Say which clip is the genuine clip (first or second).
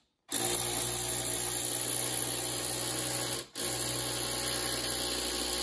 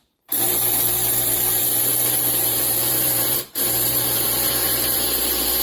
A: first